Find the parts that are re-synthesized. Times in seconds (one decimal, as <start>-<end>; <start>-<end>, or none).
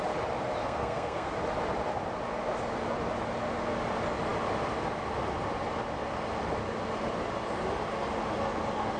0.6-1.3